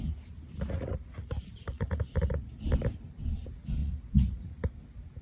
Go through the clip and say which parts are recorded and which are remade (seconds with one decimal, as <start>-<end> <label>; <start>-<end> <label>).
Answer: 0.0-0.9 recorded; 0.9-2.5 remade; 2.5-3.8 recorded; 3.8-4.7 remade; 4.7-5.2 recorded